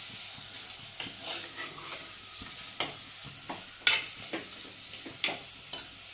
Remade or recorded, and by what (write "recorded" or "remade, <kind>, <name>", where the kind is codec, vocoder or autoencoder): recorded